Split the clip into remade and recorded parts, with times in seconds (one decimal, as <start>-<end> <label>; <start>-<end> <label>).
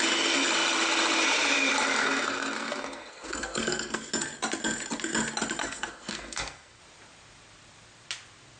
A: 0.0-2.0 recorded; 2.0-4.1 remade; 4.1-5.6 recorded; 5.6-6.8 remade; 6.8-8.6 recorded